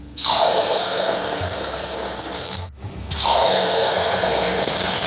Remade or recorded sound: remade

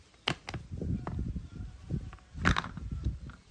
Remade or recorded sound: recorded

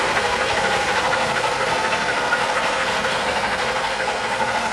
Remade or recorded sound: remade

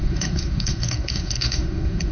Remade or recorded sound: remade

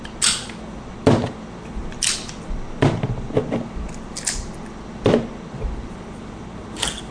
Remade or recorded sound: recorded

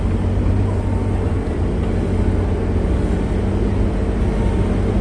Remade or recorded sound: recorded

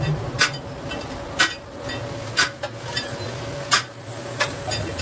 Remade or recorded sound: recorded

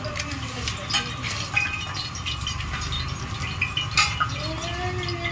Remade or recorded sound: recorded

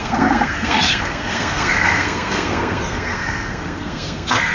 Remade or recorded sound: remade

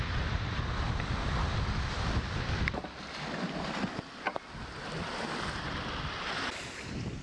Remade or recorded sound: recorded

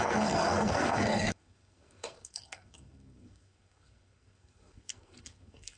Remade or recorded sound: remade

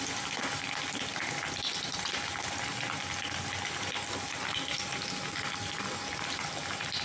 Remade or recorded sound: recorded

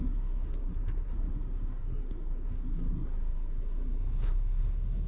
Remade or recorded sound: remade